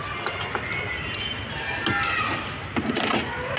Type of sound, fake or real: real